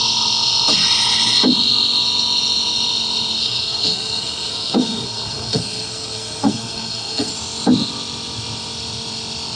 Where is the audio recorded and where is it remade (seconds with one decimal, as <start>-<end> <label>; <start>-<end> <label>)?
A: 0.0-3.4 recorded; 3.4-7.3 remade; 7.3-9.6 recorded